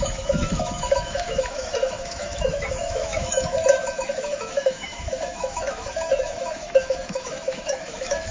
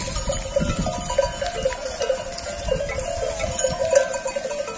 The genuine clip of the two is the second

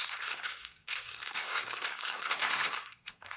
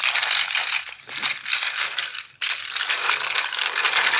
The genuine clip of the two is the second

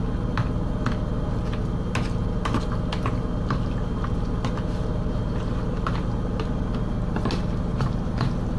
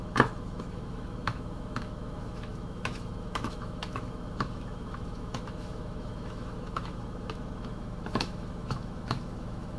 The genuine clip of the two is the first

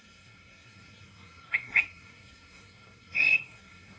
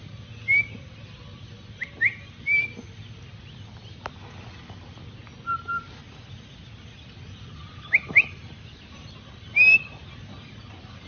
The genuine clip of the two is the second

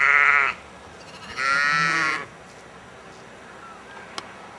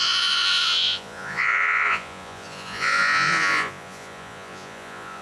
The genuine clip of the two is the first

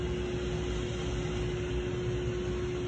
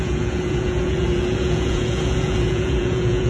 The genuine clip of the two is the first